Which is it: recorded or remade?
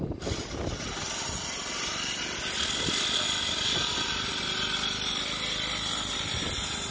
recorded